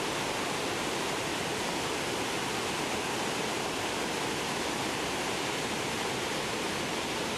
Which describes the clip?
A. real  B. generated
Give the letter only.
A